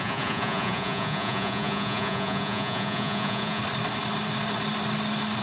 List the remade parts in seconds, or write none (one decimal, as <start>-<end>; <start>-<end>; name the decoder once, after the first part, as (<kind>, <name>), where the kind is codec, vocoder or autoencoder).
0.0-3.6 (vocoder, Vocos)